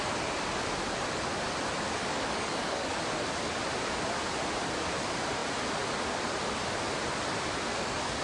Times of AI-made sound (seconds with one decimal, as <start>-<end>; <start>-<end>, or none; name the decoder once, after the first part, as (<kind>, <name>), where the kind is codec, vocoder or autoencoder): 2.0-3.0 (codec, DAC); 7.7-8.2